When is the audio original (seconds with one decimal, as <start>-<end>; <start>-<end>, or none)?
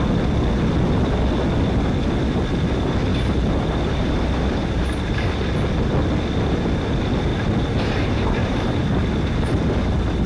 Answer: 0.0-3.1; 5.3-7.3; 8.8-10.3